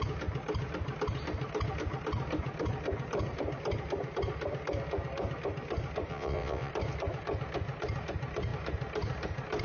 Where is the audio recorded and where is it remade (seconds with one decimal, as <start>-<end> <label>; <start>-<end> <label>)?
0.0-6.1 recorded; 6.1-6.7 remade; 6.7-9.6 recorded